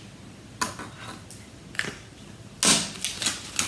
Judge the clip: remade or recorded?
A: recorded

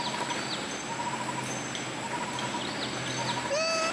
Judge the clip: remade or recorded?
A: recorded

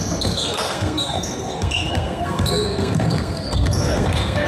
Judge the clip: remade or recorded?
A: remade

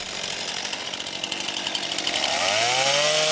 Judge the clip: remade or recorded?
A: recorded